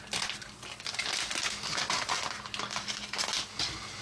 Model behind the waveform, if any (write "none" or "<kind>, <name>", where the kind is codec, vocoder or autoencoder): none